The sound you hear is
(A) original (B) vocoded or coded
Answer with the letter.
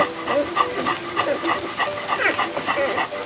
A